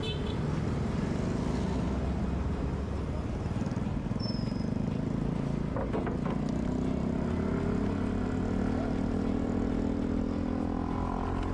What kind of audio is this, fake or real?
real